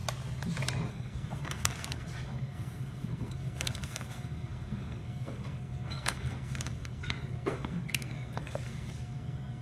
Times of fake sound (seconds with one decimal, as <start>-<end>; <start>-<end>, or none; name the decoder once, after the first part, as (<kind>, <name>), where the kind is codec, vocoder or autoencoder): 0.9-9.6 (codec, SNAC)